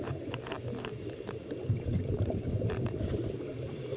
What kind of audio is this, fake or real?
fake